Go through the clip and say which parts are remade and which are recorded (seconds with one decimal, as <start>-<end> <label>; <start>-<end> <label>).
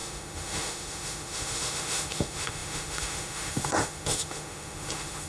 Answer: 0.0-5.3 remade